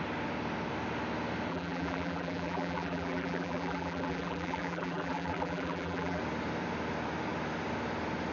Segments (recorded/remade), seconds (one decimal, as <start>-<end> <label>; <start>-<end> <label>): 0.0-1.5 recorded; 1.5-6.2 remade; 6.2-8.3 recorded